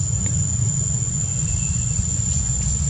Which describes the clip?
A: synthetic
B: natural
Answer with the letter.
A